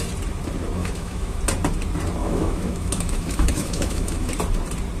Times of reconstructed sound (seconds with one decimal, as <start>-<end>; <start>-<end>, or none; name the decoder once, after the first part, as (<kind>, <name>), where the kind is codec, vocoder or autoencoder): 0.8-1.4 (autoencoder, DAC-VAE); 2.2-4.3